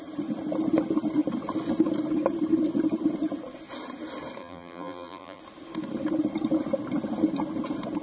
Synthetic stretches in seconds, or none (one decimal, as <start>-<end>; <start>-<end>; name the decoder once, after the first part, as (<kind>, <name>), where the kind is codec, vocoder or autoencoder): 4.4-5.4 (vocoder, BigVGAN v2)